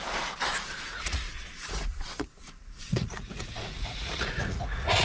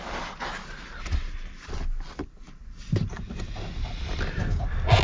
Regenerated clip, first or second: first